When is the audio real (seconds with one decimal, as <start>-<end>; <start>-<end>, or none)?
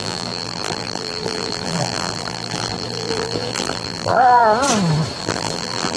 4.4-5.2